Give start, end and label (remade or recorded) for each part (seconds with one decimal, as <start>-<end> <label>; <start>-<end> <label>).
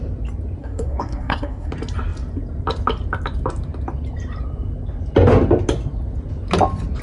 0.0-0.6 recorded; 0.6-1.7 remade; 1.7-7.0 recorded